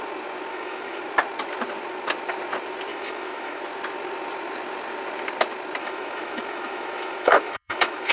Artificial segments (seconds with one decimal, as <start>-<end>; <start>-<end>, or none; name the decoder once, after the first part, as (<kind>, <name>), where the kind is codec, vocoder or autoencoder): 0.5-1.0 (autoencoder, DAC-VAE); 2.9-3.6; 5.8-8.1